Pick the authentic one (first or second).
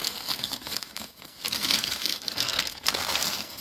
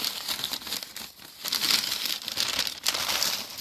second